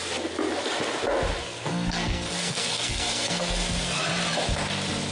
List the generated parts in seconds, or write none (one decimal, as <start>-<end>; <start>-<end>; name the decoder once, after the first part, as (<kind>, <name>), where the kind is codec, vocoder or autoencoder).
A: 1.4-4.0 (codec, SNAC)